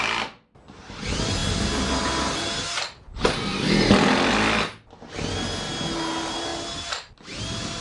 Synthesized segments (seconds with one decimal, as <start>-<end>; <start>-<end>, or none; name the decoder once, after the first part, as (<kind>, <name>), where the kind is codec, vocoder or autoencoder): none